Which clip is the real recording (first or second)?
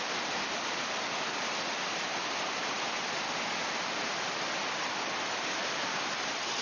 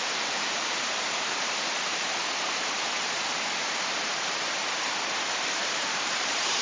first